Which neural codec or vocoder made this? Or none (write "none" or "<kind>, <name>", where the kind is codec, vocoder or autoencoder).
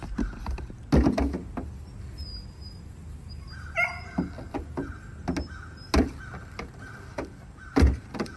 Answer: none